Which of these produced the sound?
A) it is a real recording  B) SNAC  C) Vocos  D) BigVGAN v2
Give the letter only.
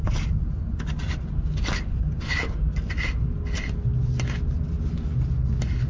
A